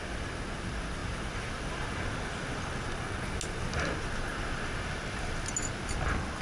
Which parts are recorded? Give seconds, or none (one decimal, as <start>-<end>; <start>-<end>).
0.0-6.4